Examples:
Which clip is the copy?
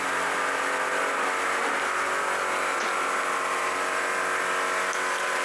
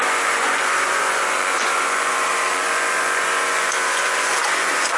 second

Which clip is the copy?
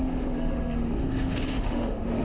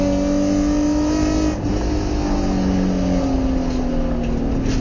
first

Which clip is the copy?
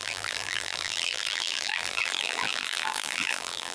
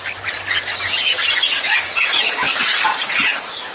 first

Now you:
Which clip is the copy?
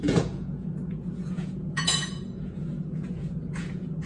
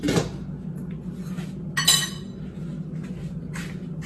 first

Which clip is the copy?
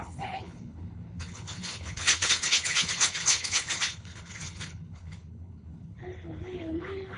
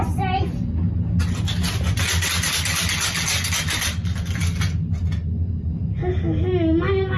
first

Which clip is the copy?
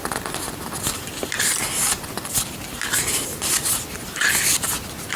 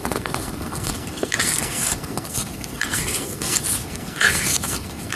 second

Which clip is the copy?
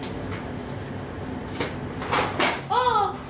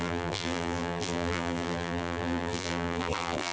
second